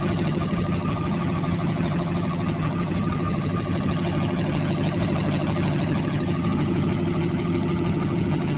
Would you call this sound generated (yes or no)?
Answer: yes